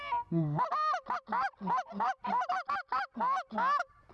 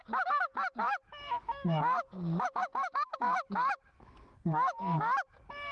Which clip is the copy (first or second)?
second